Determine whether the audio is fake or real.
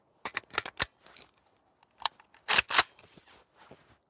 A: real